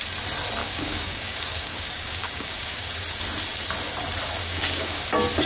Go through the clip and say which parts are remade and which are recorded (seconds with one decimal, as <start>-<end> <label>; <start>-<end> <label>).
0.0-0.6 recorded; 0.6-2.9 remade; 2.9-4.4 recorded; 4.4-5.0 remade; 5.0-5.5 recorded